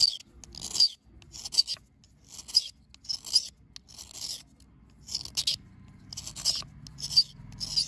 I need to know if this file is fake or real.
real